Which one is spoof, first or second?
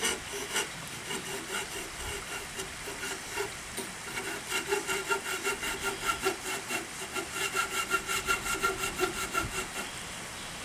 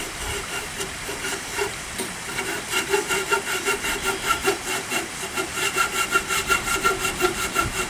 second